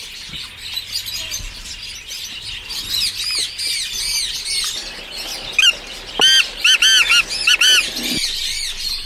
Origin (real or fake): real